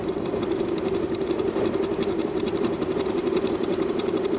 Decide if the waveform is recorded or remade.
remade